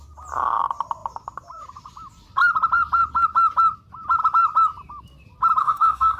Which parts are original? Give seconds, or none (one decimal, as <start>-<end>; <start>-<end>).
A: 0.0-5.6